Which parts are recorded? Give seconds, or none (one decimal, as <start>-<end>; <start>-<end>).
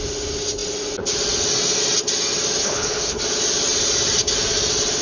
0.0-2.6; 3.2-5.0